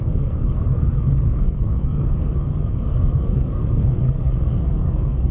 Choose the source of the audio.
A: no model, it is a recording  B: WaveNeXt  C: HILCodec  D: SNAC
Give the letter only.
D